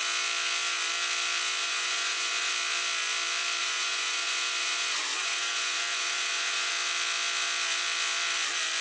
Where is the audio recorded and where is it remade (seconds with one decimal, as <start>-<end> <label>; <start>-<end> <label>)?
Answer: 0.0-1.6 recorded; 1.6-2.5 remade; 2.5-3.6 recorded; 3.6-6.7 remade; 6.7-8.8 recorded